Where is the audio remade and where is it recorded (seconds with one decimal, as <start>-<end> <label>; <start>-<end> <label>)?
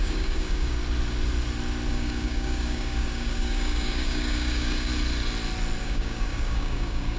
0.0-0.8 remade; 0.8-1.9 recorded; 1.9-4.9 remade; 4.9-5.8 recorded; 5.8-7.2 remade